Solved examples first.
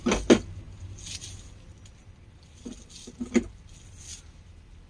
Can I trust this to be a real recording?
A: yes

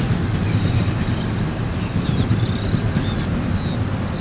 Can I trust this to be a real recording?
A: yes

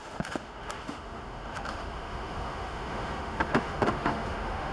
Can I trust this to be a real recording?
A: no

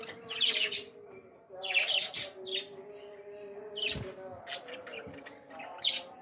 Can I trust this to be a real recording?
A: yes